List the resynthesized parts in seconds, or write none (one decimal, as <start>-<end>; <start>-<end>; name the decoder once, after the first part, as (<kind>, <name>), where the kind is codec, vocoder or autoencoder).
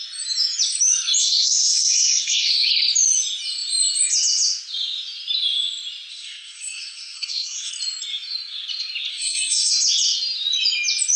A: 1.2-2.7 (codec, SNAC); 6.1-7.7; 9.1-9.7